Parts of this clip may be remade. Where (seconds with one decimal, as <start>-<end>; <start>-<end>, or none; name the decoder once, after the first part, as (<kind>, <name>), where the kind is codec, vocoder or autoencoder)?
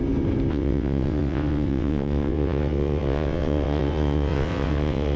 0.5-5.2 (vocoder, WaveNeXt)